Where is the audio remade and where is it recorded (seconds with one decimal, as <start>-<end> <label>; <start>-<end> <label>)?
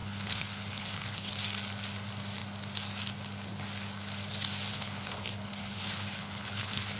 0.0-1.3 remade; 1.3-4.7 recorded; 4.7-7.0 remade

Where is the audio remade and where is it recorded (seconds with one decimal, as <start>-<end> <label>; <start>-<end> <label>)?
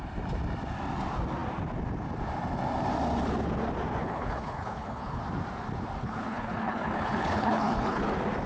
0.0-4.0 recorded; 4.0-5.2 remade; 5.2-6.0 recorded; 6.0-8.0 remade; 8.0-8.5 recorded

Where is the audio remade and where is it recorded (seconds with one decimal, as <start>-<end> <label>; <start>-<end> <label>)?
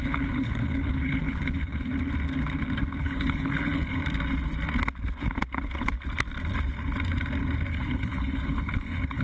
0.0-1.9 remade; 1.9-3.0 recorded; 3.0-4.0 remade; 4.0-7.7 recorded; 7.7-9.2 remade